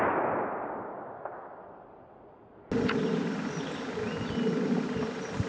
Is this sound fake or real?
real